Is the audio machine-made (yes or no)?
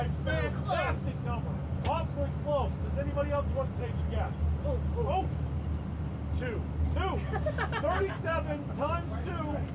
no